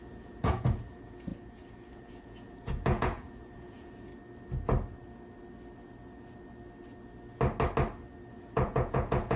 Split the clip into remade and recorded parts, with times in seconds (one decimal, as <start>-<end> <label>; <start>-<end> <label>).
0.0-4.1 remade; 4.1-8.3 recorded; 8.3-9.4 remade

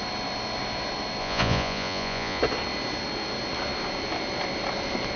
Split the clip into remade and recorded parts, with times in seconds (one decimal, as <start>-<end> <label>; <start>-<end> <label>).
0.0-1.2 recorded; 1.2-2.4 remade; 2.4-5.2 recorded